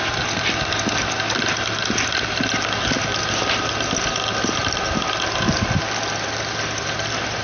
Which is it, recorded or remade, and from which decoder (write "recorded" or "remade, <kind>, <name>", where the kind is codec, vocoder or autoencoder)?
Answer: recorded